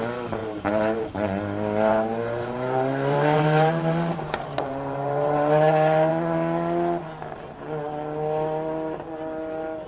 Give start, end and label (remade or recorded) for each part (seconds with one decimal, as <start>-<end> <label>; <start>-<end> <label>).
0.0-0.4 recorded; 0.4-1.0 remade; 1.0-1.9 recorded; 1.9-6.1 remade; 6.1-9.9 recorded